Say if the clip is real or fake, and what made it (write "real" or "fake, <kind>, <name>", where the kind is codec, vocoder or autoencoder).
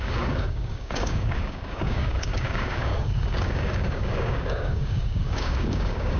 fake, codec, DAC